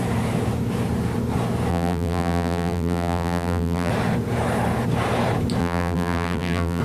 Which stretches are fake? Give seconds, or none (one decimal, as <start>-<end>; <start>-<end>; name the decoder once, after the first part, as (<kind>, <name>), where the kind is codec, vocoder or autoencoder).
1.7-3.9 (vocoder, BigVGAN v2); 5.6-6.8